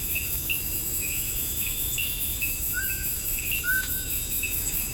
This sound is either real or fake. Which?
fake